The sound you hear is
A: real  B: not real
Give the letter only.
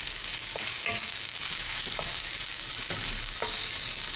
B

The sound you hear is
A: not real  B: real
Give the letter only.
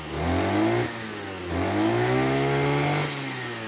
B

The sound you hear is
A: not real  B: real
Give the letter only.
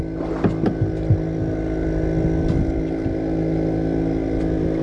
B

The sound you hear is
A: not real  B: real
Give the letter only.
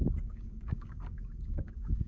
A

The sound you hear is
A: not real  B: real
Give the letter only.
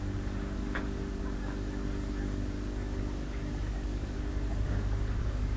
A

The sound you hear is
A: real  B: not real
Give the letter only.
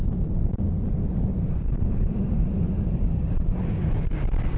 A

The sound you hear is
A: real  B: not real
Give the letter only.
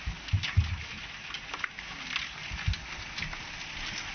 A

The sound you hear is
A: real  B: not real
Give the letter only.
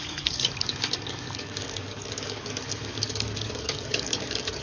B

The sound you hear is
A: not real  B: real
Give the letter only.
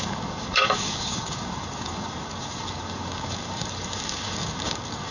A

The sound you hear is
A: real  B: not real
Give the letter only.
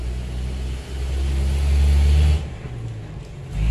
A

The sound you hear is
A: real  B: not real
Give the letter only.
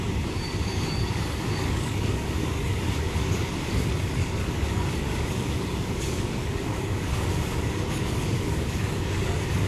B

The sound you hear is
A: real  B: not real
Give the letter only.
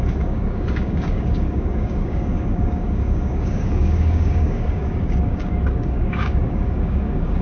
B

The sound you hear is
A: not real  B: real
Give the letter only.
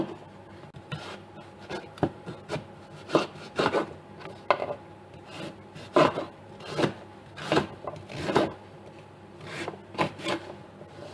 B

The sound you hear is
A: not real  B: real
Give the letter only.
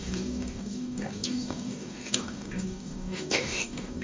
A